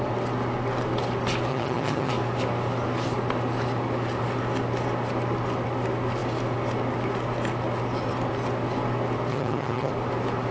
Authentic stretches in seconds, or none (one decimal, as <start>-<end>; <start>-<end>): 0.0-1.5; 2.1-9.3; 9.9-10.5